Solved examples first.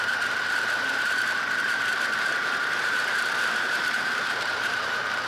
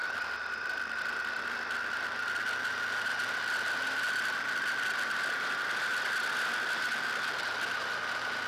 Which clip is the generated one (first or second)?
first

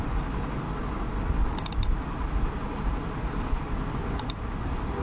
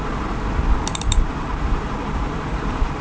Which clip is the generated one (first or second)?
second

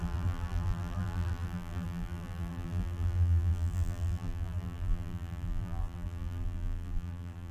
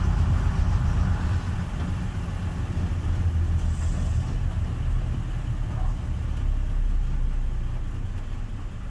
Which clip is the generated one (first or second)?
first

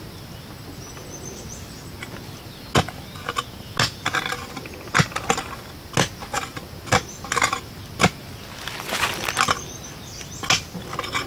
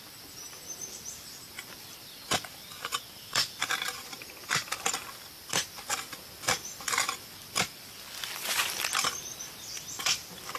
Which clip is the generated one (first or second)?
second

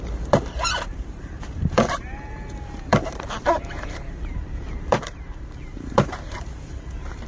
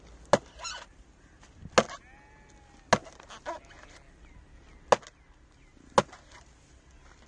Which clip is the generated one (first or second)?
first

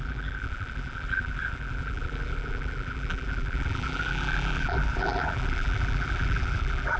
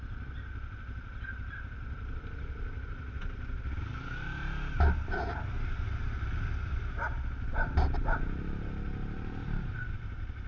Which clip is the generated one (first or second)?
first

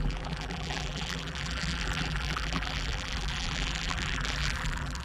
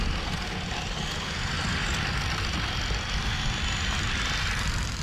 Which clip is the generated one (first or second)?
first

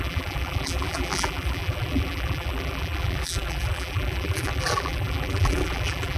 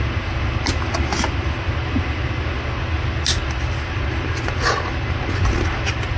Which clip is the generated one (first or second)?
first